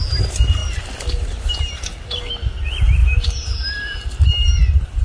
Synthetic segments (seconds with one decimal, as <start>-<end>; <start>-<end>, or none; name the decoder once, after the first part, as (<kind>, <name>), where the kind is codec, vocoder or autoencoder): none

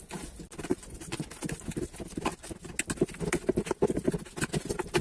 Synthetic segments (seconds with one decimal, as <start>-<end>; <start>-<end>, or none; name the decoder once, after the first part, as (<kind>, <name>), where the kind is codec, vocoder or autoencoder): 0.7-1.3 (vocoder, Vocos)

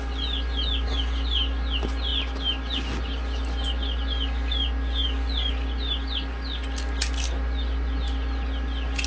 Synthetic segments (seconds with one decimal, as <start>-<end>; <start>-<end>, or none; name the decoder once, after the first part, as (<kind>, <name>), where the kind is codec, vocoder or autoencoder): none

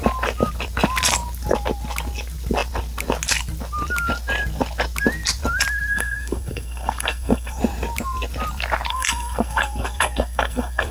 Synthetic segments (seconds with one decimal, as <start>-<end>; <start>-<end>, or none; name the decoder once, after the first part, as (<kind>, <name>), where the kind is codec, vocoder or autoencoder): 5.9-7.6 (codec, SNAC); 8.9-10.9

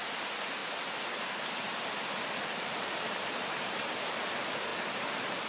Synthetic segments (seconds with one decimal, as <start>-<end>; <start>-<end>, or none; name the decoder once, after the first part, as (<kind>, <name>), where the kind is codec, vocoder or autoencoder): none

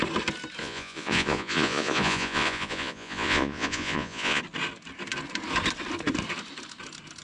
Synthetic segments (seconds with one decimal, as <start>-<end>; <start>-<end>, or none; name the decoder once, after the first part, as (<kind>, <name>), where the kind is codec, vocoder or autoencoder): 0.6-4.4 (vocoder, Vocos)